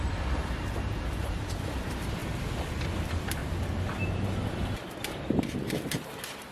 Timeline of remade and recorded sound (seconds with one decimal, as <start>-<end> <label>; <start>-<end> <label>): 0.0-2.2 remade; 2.2-2.8 recorded; 2.8-3.4 remade; 3.4-4.0 recorded; 4.0-6.5 remade